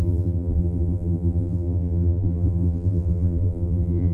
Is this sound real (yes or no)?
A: no